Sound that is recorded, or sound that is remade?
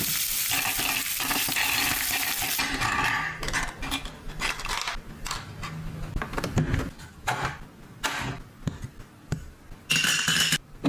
recorded